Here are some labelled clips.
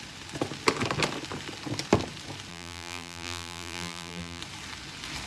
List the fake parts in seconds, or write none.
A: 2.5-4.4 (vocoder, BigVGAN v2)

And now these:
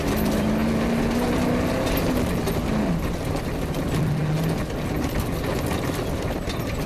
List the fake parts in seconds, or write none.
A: 0.0-0.6 (vocoder, BigVGAN v2); 2.9-4.2; 5.0-6.9